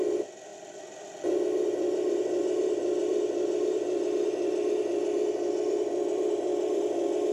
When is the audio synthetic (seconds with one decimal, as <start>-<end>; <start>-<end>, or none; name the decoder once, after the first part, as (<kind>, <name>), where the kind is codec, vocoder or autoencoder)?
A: 0.0-7.3 (vocoder, BigVGAN v2)